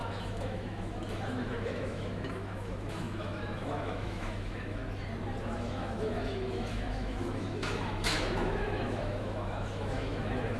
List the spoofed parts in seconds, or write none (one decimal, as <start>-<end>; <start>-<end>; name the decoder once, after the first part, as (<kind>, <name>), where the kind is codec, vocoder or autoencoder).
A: 0.0-4.8 (autoencoder, DAC-VAE); 5.4-10.6